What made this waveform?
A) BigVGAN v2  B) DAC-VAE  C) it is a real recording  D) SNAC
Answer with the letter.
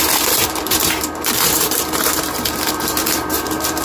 A